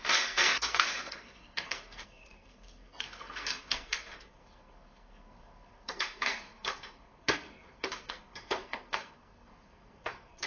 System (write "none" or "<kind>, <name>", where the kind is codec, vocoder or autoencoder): codec, SNAC